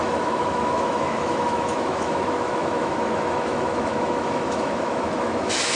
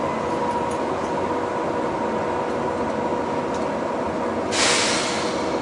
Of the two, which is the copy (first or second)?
first